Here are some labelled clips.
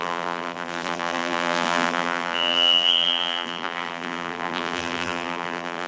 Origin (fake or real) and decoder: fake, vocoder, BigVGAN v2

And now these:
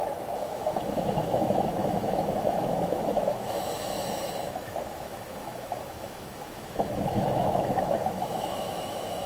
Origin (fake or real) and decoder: fake, autoencoder, DAC-VAE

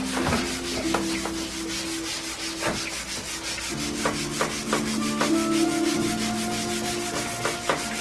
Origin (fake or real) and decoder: real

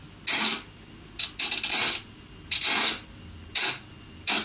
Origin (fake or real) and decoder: real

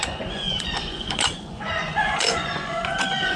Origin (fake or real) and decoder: fake, vocoder, Vocos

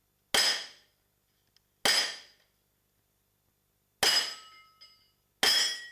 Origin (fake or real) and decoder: real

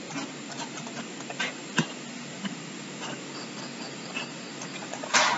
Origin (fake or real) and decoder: real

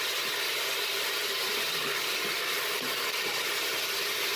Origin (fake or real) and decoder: real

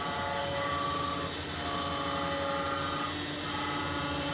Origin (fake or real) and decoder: real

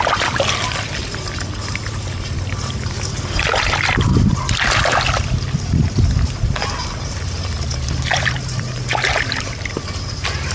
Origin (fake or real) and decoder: real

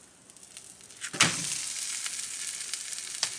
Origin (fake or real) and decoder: real